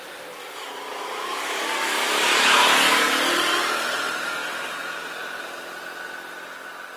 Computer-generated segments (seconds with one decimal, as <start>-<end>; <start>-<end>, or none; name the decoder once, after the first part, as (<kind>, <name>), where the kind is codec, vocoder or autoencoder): 0.4-3.1 (codec, DAC)